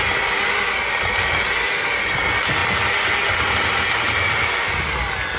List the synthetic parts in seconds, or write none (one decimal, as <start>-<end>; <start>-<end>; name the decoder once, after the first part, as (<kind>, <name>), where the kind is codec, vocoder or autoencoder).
none